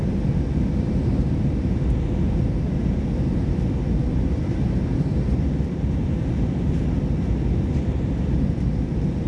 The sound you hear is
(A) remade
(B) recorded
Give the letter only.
B